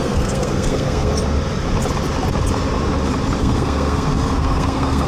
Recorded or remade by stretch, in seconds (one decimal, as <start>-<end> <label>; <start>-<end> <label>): 0.0-1.1 remade; 1.1-3.4 recorded; 3.4-5.1 remade